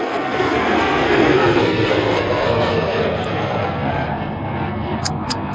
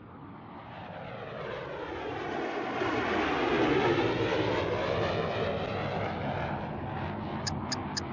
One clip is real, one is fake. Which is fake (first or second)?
first